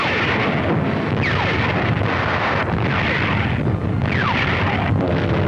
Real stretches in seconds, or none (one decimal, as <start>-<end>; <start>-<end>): 0.0-5.5